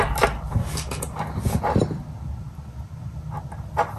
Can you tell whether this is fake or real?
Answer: real